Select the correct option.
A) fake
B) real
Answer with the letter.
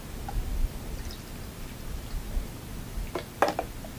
B